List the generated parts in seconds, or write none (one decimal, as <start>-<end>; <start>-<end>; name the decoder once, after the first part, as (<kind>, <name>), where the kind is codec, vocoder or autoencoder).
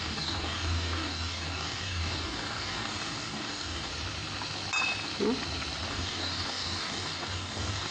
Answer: 0.0-3.9 (codec, DAC); 5.9-7.9